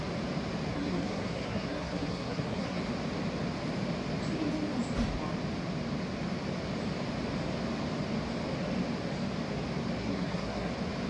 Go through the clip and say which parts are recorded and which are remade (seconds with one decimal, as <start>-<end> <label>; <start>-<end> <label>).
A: 0.0-0.7 recorded; 0.7-2.8 remade; 2.8-10.0 recorded; 10.0-10.7 remade; 10.7-11.1 recorded